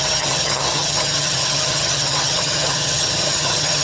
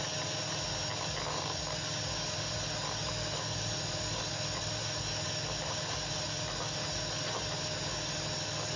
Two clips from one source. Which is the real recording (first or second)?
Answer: second